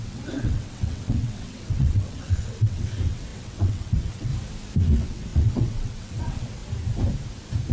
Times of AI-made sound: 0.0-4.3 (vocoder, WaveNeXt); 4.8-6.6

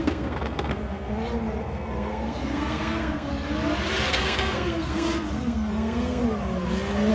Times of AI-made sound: 0.0-1.1 (codec, SNAC); 1.6-3.3; 4.1-6.2